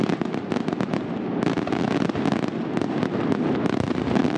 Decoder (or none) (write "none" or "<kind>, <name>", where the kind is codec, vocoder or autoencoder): none